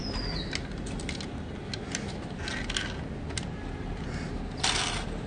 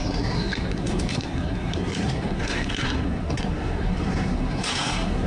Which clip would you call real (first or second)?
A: first